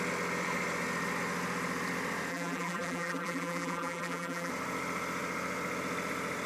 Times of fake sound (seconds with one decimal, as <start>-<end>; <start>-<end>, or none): 2.3-4.5